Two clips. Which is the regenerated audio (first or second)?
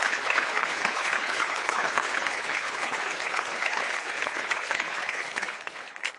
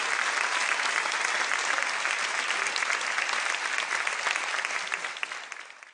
first